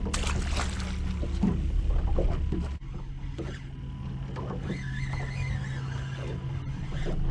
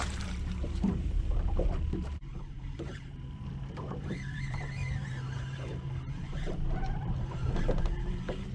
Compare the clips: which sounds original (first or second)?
first